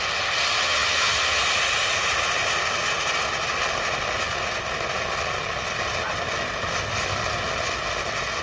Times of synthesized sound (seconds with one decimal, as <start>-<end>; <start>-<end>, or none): 0.6-1.4